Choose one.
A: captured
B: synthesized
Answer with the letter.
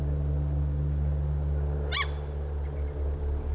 A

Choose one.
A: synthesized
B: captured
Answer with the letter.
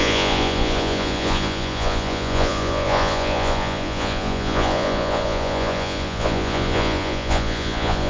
A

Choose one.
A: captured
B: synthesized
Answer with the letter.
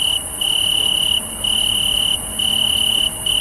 A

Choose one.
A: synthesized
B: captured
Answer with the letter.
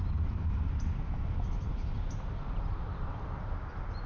B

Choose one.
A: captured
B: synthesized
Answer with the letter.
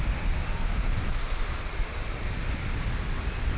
A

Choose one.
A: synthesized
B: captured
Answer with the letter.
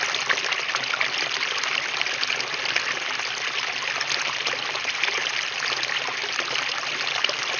B